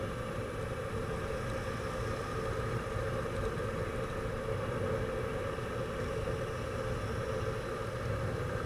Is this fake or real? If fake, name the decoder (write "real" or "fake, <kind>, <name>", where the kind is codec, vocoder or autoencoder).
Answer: real